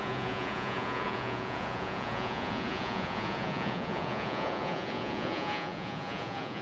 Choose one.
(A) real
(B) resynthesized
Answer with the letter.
B